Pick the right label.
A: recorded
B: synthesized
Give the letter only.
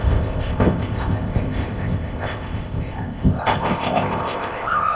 B